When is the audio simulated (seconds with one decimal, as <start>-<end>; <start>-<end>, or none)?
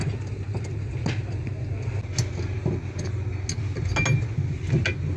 none